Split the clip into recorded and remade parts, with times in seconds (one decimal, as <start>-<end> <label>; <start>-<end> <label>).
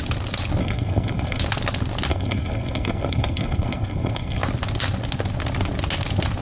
0.0-0.6 recorded; 0.6-1.4 remade; 1.4-2.1 recorded; 2.1-4.4 remade; 4.4-6.4 recorded